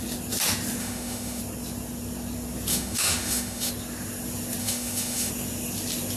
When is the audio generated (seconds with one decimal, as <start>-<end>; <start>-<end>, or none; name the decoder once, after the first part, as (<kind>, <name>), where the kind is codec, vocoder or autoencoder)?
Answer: 0.8-1.4 (autoencoder, DAC-VAE); 2.7-3.7; 4.6-5.3